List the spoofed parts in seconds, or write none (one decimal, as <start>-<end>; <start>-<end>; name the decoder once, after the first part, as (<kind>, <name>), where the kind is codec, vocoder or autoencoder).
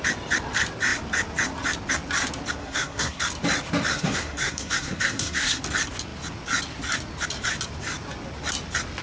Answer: 2.6-3.2 (codec, SNAC); 3.9-5.6